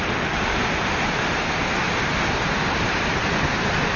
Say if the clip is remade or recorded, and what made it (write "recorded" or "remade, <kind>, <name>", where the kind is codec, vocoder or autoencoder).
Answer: recorded